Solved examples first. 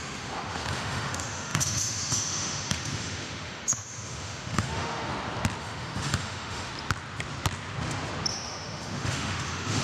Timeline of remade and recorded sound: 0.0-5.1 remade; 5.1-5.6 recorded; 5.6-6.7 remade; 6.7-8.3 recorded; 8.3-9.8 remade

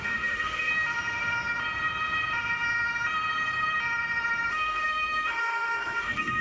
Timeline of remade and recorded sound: 0.0-0.7 remade; 0.7-4.5 recorded; 4.5-6.4 remade

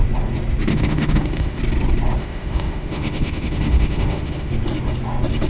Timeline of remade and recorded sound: 0.0-0.7 recorded; 0.7-1.6 remade; 1.6-2.2 recorded; 2.2-4.5 remade; 4.5-5.5 recorded

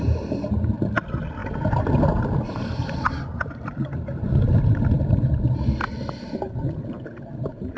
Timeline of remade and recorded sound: 0.0-7.8 recorded

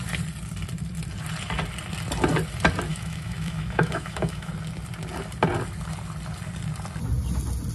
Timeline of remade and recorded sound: 0.0-2.9 recorded; 2.9-4.5 remade; 4.5-7.7 recorded

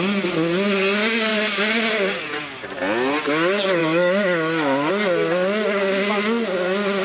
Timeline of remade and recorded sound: 0.0-3.8 recorded; 3.8-4.9 remade; 4.9-7.0 recorded

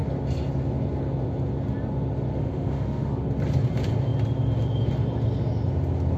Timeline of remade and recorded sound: 0.0-2.3 recorded; 2.3-3.1 remade; 3.1-6.2 recorded

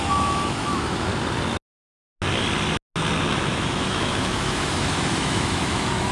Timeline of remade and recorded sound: 0.0-1.1 remade; 1.1-3.3 recorded; 3.3-6.1 remade